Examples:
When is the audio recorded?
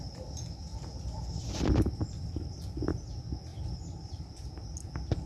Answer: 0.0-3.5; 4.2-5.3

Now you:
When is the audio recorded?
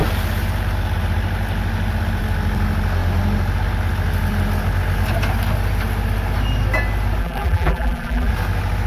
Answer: 0.0-7.2; 8.3-8.9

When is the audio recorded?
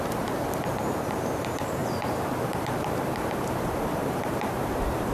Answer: none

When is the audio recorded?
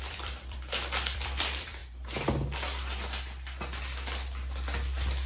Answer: 1.8-5.3